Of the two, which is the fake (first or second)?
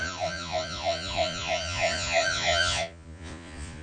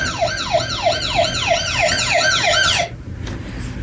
first